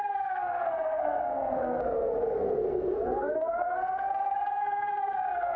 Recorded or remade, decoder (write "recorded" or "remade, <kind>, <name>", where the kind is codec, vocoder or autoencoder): remade, codec, SNAC